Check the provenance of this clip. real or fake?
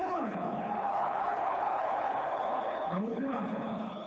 fake